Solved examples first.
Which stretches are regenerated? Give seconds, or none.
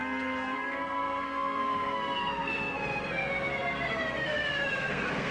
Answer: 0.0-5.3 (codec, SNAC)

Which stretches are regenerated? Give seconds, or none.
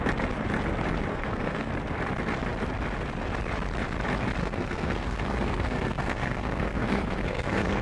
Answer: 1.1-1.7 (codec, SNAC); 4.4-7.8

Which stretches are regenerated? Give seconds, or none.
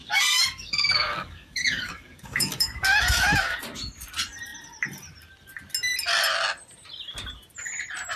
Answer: 0.0-3.6 (codec, DAC)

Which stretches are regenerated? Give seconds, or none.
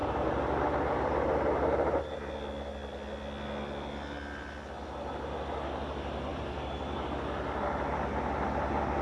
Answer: 0.0-2.3 (vocoder, BigVGAN v2); 6.3-7.1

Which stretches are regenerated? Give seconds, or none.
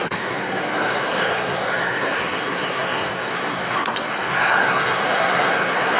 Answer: 0.0-6.0 (codec, SNAC)